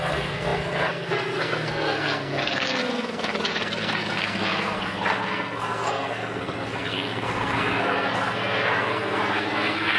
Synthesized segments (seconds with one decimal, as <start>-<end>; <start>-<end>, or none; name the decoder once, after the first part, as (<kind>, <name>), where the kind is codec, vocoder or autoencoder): 0.0-10.0 (codec, SNAC)